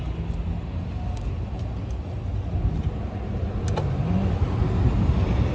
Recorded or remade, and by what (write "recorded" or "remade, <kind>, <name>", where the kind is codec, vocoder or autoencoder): recorded